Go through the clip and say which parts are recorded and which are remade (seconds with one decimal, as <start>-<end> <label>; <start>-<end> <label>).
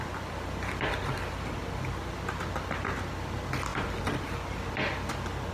0.0-5.5 recorded